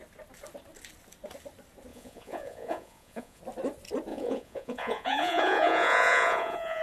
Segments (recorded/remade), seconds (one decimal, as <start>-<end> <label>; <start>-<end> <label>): 0.0-1.9 recorded; 1.9-3.4 remade; 3.4-4.1 recorded; 4.1-6.8 remade